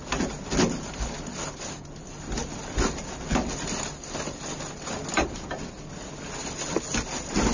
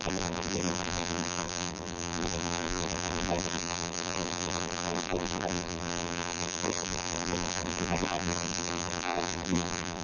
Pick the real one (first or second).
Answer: first